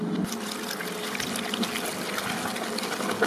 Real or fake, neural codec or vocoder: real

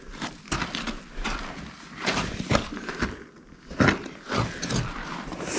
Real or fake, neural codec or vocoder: real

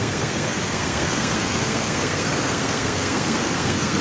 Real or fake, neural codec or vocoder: fake, codec, SNAC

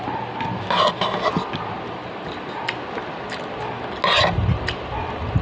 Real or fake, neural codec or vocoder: real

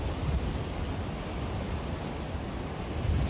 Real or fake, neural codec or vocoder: real